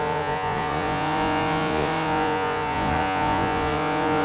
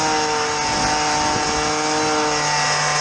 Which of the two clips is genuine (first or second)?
second